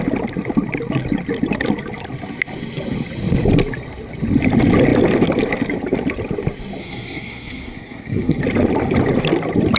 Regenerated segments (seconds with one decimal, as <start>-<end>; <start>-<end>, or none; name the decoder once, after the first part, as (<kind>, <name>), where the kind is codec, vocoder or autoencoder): 6.8-8.4 (codec, SNAC)